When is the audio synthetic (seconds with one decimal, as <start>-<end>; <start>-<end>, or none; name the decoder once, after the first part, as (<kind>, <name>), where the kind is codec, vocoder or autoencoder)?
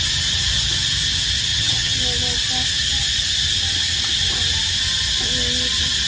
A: 1.5-2.0 (vocoder, HiFi-GAN)